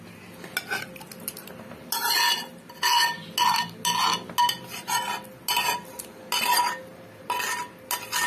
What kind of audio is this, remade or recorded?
recorded